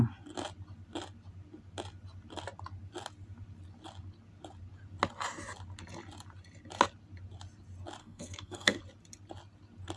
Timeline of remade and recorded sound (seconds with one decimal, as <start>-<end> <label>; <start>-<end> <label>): 0.0-8.0 recorded; 8.0-8.8 remade; 8.8-10.0 recorded